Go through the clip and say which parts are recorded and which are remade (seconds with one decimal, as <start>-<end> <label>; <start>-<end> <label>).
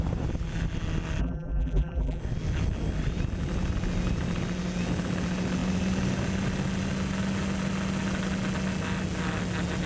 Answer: 0.0-1.2 recorded; 1.2-2.2 remade; 2.2-9.9 recorded